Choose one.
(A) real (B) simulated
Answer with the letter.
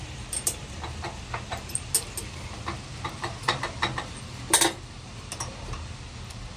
A